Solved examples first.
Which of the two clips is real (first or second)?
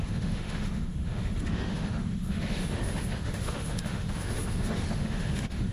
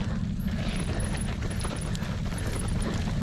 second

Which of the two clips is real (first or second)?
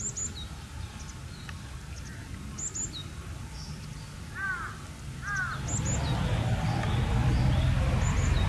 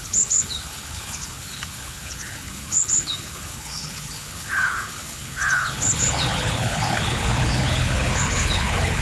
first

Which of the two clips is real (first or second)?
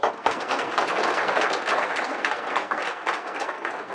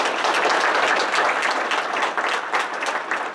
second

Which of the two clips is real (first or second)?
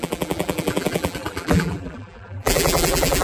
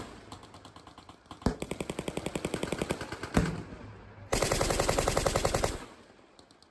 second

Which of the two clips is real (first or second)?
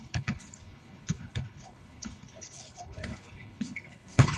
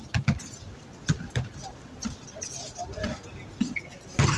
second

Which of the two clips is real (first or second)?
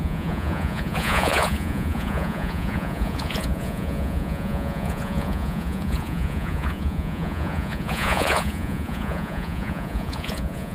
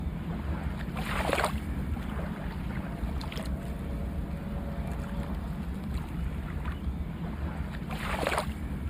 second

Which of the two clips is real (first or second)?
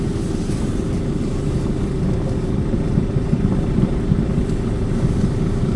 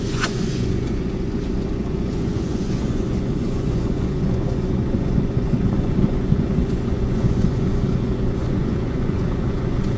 first